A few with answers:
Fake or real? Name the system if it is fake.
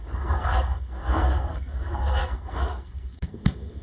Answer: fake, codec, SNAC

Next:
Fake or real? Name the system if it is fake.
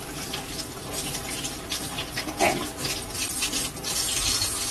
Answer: real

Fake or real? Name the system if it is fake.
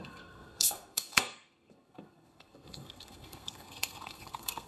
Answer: fake, codec, SNAC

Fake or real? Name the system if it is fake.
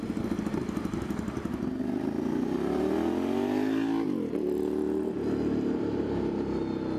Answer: real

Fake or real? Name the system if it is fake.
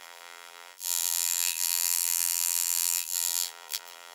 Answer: fake, vocoder, BigVGAN v2